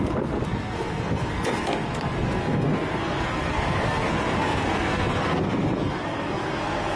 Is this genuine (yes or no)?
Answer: no